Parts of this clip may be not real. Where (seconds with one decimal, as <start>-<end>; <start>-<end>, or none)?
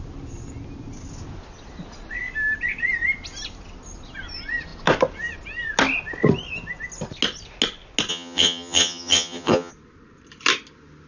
8.1-9.7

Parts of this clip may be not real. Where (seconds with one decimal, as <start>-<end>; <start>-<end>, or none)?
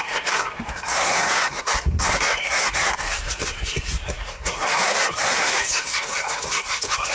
0.0-7.1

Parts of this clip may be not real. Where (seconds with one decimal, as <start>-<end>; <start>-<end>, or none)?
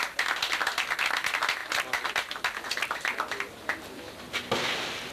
none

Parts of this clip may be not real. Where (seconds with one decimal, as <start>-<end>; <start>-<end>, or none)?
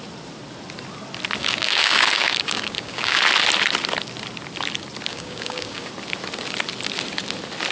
1.4-3.2; 5.1-5.9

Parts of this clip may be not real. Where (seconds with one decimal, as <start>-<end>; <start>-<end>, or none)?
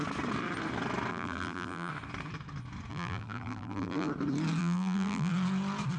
1.1-1.9; 2.9-4.1; 4.6-5.3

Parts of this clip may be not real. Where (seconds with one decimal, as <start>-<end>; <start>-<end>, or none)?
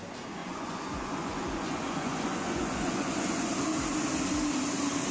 0.4-3.5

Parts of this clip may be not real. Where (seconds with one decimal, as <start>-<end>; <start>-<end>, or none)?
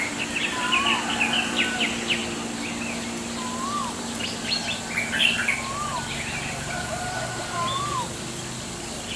none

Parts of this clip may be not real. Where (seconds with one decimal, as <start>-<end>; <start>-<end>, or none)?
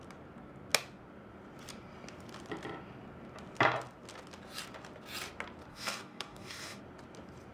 5.7-6.8